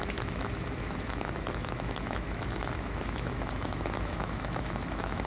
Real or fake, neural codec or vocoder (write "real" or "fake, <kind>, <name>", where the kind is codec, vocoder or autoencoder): fake, autoencoder, DAC-VAE